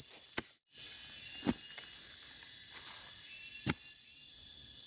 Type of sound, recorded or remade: recorded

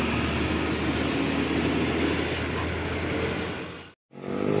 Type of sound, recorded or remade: recorded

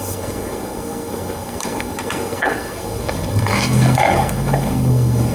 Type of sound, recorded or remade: remade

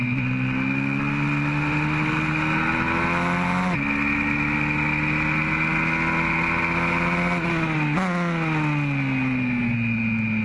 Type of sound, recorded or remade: recorded